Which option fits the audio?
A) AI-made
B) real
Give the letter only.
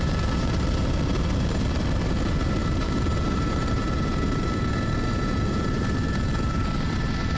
A